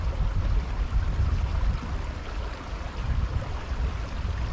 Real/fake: real